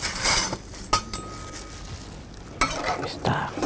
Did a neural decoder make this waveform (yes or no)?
no